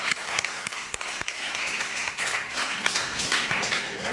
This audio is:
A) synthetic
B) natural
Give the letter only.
A